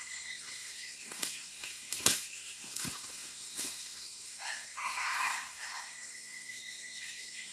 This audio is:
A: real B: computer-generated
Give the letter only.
B